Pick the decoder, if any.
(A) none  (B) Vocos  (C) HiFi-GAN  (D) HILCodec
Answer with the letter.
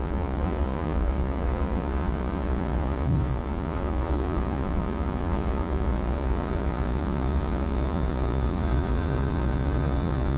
B